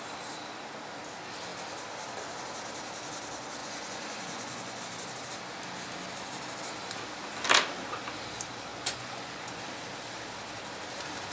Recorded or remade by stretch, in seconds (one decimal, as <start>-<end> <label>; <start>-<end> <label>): 0.0-3.6 recorded; 3.6-4.8 remade; 4.8-8.7 recorded; 8.7-9.6 remade; 9.6-11.3 recorded